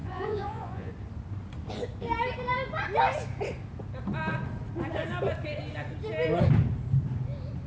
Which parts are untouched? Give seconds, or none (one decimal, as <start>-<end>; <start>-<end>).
0.9-7.7